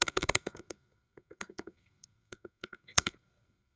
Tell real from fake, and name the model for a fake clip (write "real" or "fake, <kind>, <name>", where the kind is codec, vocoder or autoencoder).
fake, codec, SNAC